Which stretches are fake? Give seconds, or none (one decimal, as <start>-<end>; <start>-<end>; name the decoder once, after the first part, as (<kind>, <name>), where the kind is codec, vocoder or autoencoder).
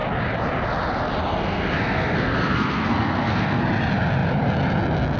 1.3-3.6 (codec, SNAC)